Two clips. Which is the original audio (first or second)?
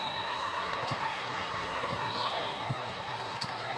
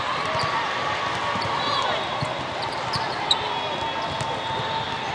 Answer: second